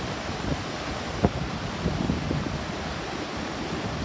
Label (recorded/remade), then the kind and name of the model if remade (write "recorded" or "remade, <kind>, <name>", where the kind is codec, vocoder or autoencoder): recorded